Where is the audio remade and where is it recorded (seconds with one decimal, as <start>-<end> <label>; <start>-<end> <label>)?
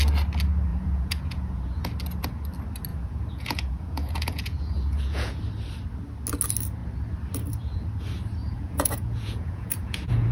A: 0.0-0.7 recorded; 0.7-1.9 remade; 1.9-2.9 recorded; 2.9-5.4 remade; 5.4-8.4 recorded; 8.4-10.3 remade